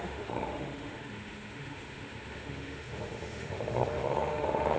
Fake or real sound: fake